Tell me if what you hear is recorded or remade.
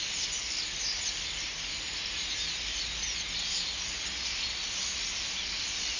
recorded